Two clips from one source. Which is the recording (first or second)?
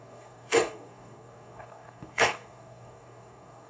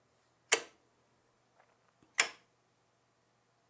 second